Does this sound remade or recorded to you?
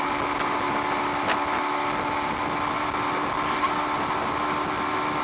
recorded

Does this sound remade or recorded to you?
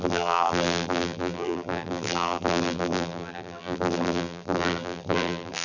remade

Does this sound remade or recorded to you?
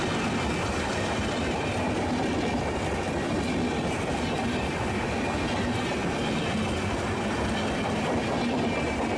recorded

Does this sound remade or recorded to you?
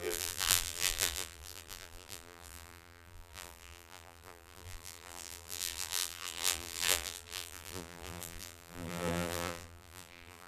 remade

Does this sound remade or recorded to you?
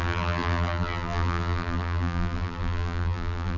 remade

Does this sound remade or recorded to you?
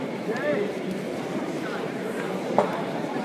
remade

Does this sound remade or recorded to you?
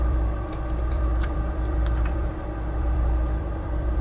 remade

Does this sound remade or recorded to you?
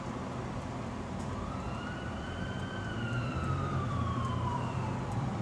remade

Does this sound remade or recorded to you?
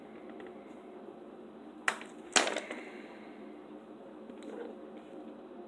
recorded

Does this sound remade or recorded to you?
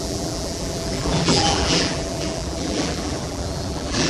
remade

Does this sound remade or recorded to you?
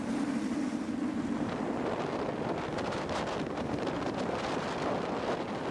recorded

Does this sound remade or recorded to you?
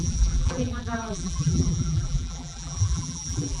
remade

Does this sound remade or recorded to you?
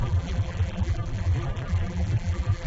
remade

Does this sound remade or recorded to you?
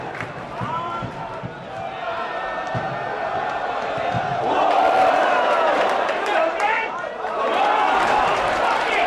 remade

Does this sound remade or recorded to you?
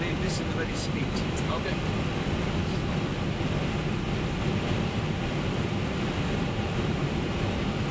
recorded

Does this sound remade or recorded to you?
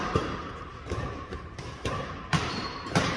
remade